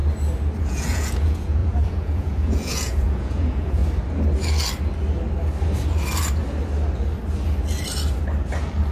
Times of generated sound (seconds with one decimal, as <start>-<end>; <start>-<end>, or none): 0.6-3.8

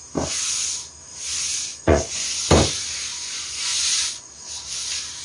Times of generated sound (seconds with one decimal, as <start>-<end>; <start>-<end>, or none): 1.7-2.4; 3.1-4.3